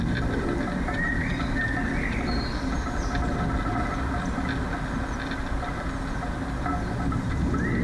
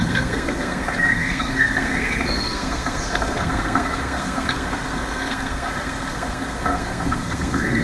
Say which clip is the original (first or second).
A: first